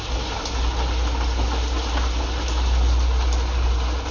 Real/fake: real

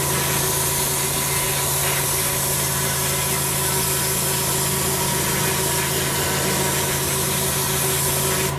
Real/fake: real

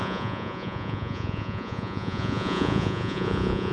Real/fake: fake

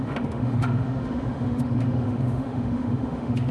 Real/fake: fake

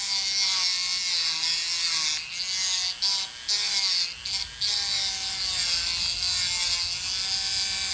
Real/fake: real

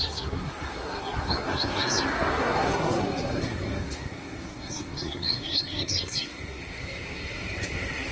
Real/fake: fake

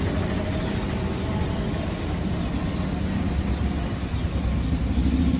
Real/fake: real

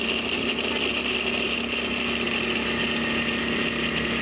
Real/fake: real